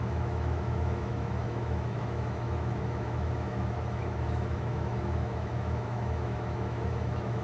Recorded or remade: remade